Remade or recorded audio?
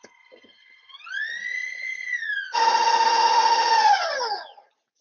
remade